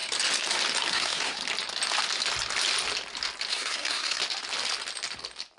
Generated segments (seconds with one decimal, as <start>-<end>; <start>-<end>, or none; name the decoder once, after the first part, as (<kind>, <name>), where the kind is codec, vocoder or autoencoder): 0.9-1.4 (codec, SNAC); 3.5-4.2